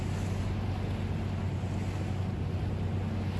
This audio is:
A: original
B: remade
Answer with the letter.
A